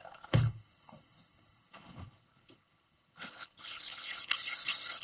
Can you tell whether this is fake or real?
fake